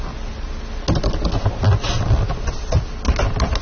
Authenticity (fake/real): real